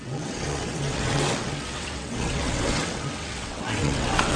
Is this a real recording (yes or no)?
no